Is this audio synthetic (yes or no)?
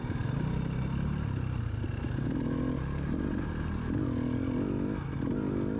no